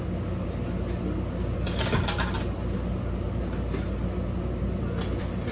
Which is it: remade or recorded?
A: recorded